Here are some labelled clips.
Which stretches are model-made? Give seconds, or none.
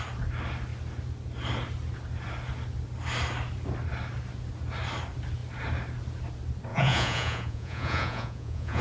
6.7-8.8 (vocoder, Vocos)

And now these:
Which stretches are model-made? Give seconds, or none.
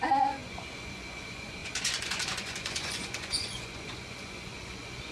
0.0-5.1 (vocoder, Vocos)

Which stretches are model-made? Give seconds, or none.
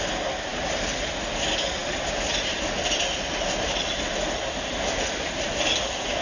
1.8-5.5 (vocoder, BigVGAN v2)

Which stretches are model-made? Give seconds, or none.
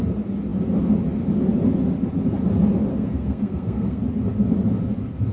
2.9-4.0 (codec, SNAC)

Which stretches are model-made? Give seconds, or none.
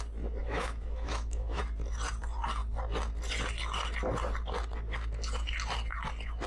0.4-1.6 (autoencoder, DAC-VAE)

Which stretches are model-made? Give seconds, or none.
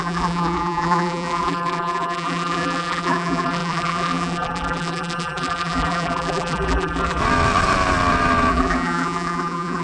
0.0-7.2 (vocoder, BigVGAN v2); 8.5-9.8